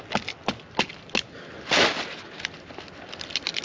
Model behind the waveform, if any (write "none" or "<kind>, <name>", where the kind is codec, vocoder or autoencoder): none